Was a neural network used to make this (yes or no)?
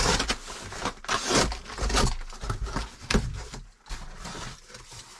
no